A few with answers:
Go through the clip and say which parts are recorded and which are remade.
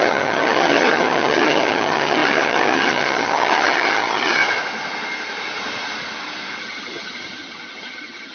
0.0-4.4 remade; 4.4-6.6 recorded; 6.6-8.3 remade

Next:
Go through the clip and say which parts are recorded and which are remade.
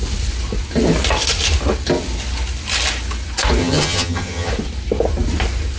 0.0-3.6 recorded; 3.6-4.5 remade; 4.5-5.8 recorded